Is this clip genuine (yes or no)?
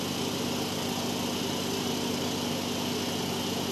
yes